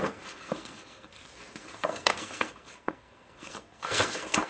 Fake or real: fake